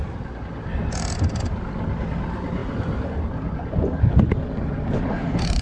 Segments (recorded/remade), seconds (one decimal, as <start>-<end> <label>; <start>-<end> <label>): 0.0-5.6 recorded